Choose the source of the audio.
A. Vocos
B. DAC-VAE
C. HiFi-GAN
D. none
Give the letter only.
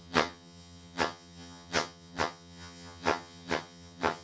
C